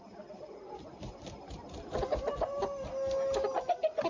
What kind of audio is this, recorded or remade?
recorded